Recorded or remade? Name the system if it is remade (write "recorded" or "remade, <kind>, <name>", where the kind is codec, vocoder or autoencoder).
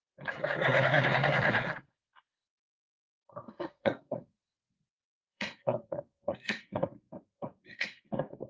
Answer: remade, codec, SNAC